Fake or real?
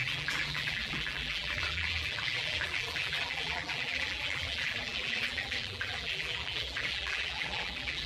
fake